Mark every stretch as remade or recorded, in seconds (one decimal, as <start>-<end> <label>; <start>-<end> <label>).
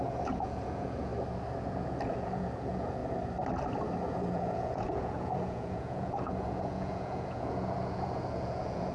0.0-1.1 remade; 1.1-1.6 recorded; 1.6-3.0 remade; 3.0-4.1 recorded; 4.1-8.9 remade